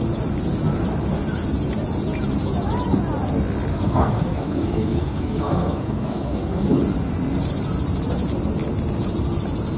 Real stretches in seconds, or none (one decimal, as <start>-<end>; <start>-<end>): 0.0-3.7; 6.8-9.8